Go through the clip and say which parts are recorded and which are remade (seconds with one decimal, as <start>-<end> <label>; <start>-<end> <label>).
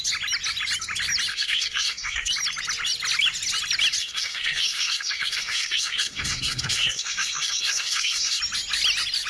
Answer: 0.0-1.3 recorded; 1.3-2.3 remade; 2.3-4.0 recorded; 4.0-8.4 remade; 8.4-9.3 recorded